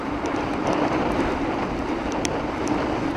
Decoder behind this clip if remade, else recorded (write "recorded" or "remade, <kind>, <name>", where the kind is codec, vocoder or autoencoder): remade, vocoder, BigVGAN v2